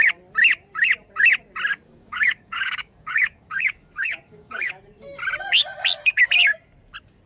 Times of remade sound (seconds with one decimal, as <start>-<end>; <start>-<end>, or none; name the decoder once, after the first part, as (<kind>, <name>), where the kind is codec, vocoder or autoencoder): 1.7-4.8 (codec, DAC)